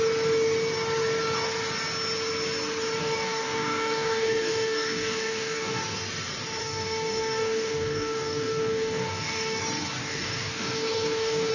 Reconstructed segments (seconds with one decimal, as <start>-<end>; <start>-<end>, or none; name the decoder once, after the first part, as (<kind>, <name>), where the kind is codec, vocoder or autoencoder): 3.0-5.8 (codec, DAC); 6.6-9.6; 10.0-11.5